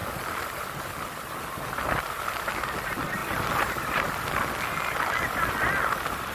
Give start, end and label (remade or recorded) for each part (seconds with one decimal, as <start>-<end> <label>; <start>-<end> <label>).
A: 0.0-6.3 recorded